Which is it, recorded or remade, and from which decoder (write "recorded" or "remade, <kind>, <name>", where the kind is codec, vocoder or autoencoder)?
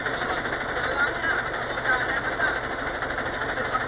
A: recorded